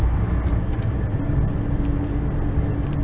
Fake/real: real